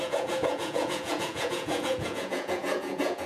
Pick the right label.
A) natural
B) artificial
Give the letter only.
B